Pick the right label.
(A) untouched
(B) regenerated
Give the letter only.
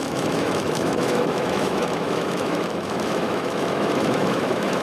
B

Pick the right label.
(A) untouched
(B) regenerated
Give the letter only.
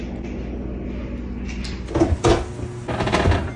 A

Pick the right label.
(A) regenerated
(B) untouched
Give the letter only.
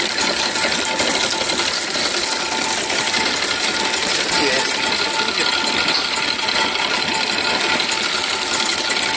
B